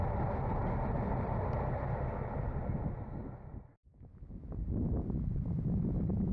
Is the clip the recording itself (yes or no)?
yes